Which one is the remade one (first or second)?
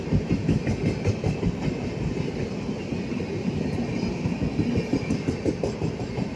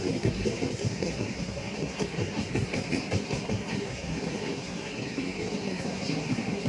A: second